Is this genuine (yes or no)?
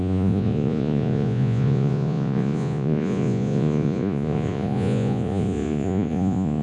no